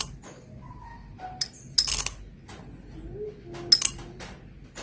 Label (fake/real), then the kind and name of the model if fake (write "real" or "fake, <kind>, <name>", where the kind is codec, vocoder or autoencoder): real